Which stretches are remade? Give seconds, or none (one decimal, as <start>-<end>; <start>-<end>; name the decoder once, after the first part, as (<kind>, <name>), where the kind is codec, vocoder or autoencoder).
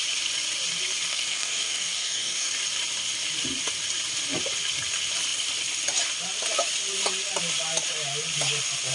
1.1-2.5 (codec, DAC)